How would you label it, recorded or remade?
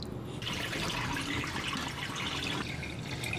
recorded